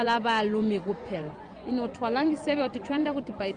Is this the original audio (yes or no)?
no